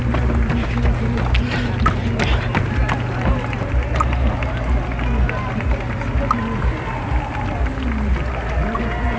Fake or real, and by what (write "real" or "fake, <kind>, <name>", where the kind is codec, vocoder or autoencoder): real